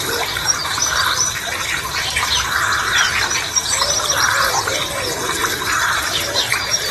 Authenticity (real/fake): fake